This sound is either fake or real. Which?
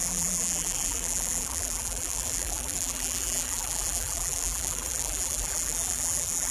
fake